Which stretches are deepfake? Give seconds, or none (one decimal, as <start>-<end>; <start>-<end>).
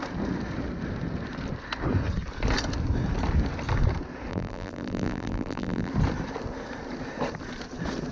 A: 4.3-5.9